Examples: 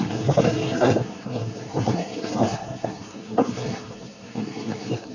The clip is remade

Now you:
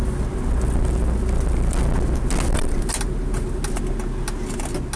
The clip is recorded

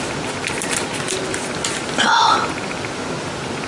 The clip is recorded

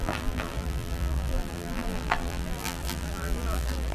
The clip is remade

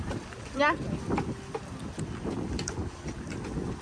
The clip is recorded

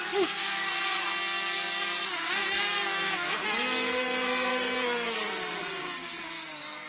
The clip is remade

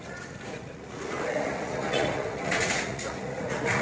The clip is remade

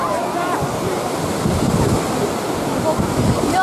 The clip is recorded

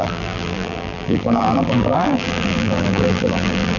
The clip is remade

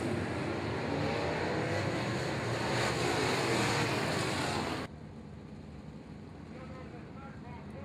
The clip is recorded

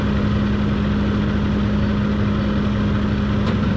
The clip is recorded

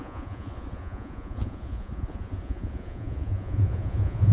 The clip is remade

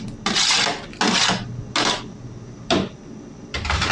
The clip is recorded